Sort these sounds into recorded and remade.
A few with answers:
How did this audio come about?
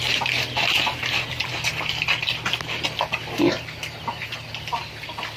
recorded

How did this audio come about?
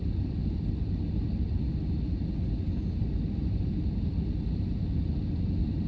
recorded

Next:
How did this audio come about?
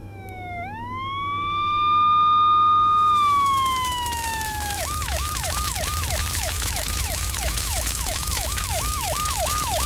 remade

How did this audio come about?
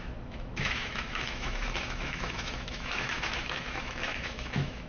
remade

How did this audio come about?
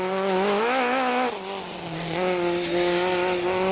recorded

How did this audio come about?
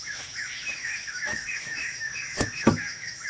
remade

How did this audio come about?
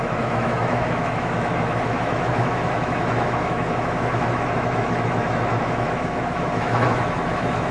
remade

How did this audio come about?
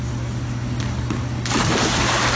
recorded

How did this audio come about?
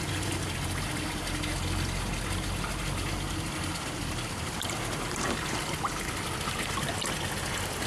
recorded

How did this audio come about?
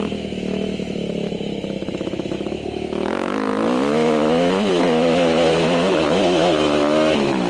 remade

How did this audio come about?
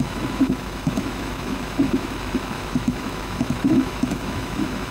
remade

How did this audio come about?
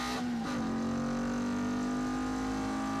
recorded